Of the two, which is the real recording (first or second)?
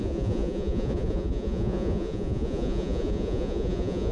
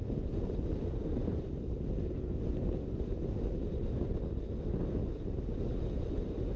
second